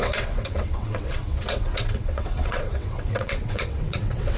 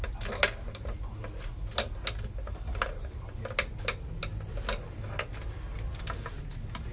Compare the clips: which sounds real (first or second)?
second